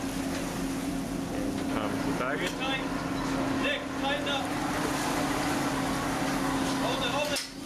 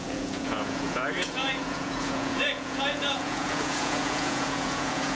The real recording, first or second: first